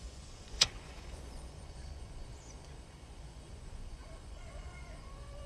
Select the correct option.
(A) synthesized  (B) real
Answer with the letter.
A